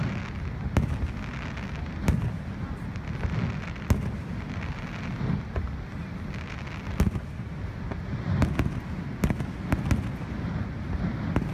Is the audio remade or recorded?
recorded